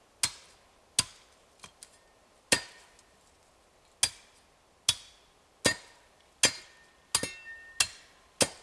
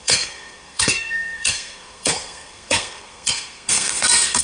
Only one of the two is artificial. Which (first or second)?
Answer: second